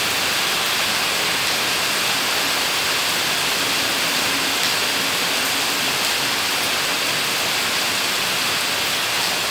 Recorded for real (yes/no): yes